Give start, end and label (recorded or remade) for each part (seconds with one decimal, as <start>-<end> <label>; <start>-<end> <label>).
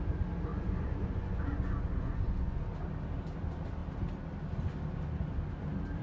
0.0-0.5 recorded; 0.5-2.6 remade; 2.6-6.0 recorded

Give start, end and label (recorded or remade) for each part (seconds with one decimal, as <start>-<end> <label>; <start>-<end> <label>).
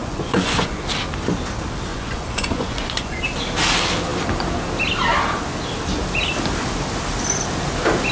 0.0-0.8 remade; 0.8-1.9 recorded; 1.9-3.2 remade; 3.2-8.1 recorded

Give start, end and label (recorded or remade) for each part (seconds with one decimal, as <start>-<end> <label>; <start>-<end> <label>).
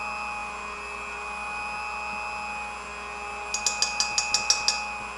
0.0-5.2 recorded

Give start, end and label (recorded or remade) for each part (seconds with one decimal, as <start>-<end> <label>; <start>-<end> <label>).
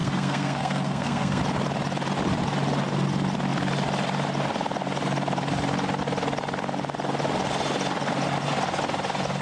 0.0-1.4 remade; 1.4-9.4 recorded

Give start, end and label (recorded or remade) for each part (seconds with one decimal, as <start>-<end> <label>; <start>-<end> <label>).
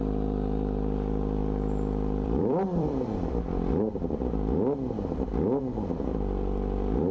0.0-1.4 recorded; 1.4-3.3 remade; 3.3-7.1 recorded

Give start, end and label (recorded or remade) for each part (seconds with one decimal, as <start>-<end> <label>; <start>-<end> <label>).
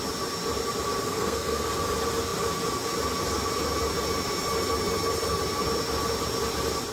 0.0-1.1 recorded; 1.1-1.7 remade; 1.7-6.9 recorded